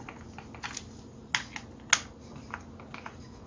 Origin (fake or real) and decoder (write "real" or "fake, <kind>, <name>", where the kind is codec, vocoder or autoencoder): real